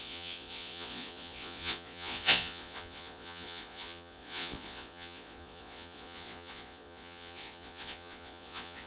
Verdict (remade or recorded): remade